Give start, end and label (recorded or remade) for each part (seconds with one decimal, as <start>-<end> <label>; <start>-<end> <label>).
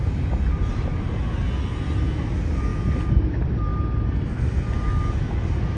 0.0-0.7 recorded; 0.7-1.2 remade; 1.2-5.8 recorded